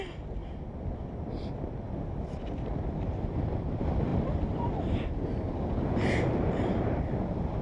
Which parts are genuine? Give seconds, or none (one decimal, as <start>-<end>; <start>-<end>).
0.0-7.6